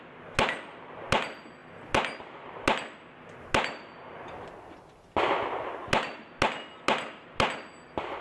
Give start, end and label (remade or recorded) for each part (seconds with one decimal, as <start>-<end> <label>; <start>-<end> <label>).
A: 0.0-8.2 recorded